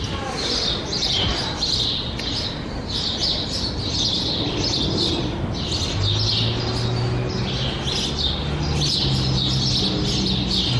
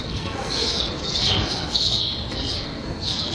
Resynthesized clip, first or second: second